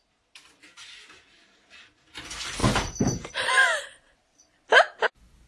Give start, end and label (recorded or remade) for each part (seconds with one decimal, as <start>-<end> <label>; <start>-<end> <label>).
0.0-2.6 recorded; 2.6-3.5 remade; 3.5-5.5 recorded